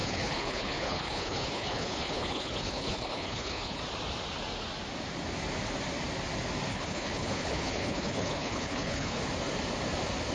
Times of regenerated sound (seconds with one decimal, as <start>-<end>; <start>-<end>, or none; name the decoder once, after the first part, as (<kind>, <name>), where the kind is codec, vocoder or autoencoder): 0.0-3.8 (codec, HILCodec); 6.7-9.2